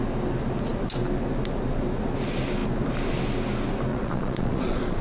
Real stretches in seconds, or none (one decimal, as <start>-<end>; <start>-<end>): 0.0-3.9